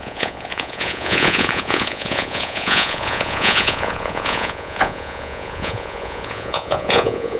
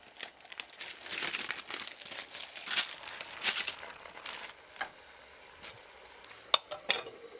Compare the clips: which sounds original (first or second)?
second